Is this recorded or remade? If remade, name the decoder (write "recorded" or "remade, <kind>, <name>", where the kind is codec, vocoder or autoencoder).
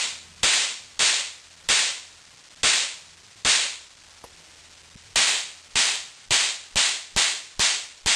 recorded